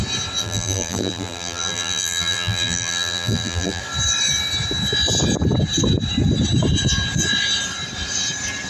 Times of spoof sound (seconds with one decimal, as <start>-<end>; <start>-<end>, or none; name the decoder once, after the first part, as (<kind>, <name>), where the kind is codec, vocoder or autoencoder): 0.4-3.8 (vocoder, BigVGAN v2)